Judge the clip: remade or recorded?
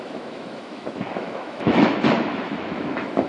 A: remade